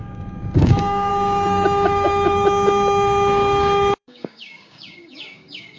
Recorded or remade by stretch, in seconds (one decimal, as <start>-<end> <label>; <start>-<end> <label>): 0.0-5.8 remade